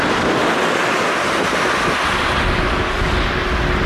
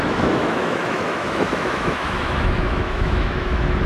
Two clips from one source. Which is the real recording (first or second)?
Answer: first